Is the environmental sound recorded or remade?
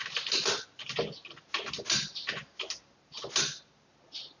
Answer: recorded